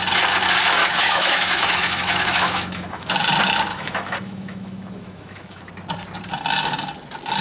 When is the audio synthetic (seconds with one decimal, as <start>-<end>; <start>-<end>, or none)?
0.8-3.1; 3.7-5.7